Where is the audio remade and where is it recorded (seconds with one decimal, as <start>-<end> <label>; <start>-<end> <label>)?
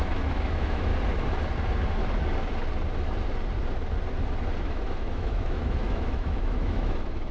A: 0.0-0.9 remade; 0.9-4.6 recorded; 4.6-7.3 remade